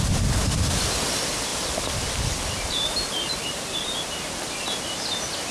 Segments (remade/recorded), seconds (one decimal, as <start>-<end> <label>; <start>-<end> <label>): 0.0-1.5 remade; 1.5-2.5 recorded; 2.5-5.5 remade